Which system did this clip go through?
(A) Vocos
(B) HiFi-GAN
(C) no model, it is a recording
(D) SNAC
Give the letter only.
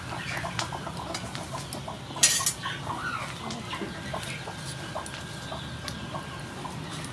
C